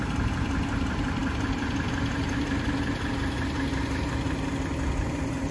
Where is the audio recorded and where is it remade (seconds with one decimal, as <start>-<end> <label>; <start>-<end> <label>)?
0.0-5.5 recorded